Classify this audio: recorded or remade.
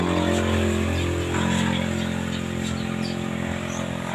recorded